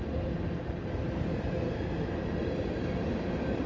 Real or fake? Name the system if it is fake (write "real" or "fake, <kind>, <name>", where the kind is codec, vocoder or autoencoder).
fake, vocoder, BigVGAN v2